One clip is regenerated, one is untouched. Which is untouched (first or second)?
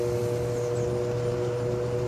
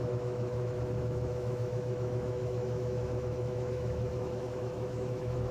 first